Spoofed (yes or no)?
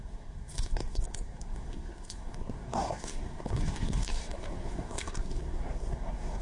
yes